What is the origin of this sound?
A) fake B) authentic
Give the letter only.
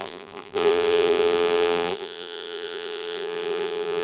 A